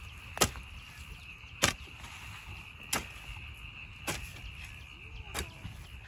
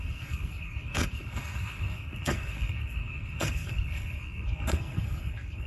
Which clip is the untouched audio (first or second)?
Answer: first